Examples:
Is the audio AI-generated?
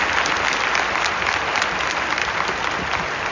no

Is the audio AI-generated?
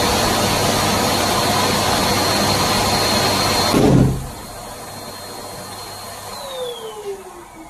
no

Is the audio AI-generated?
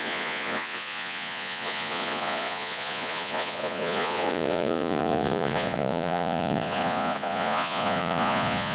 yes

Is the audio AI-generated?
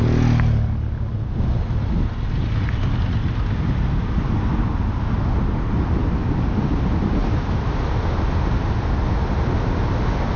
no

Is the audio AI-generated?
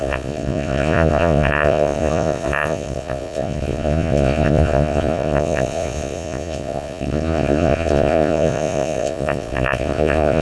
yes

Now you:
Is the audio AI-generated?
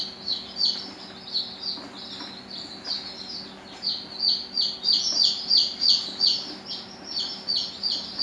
no